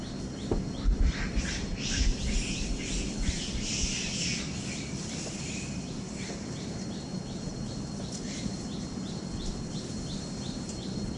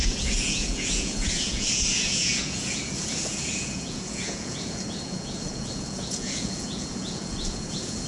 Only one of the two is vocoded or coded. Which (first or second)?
second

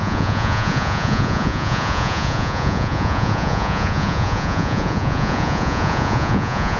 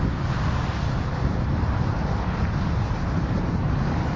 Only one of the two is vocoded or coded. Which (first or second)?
first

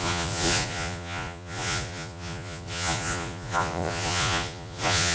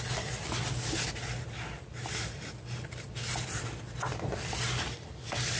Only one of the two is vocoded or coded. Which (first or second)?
first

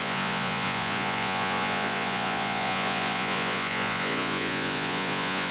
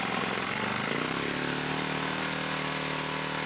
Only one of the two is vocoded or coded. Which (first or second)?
first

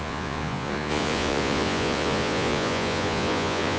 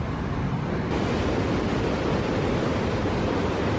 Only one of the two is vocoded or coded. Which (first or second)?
first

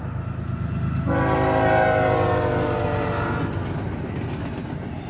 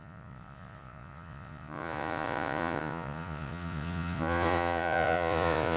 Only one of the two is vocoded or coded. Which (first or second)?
second